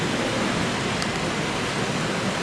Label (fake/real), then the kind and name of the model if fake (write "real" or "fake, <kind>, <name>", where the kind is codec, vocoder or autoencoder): real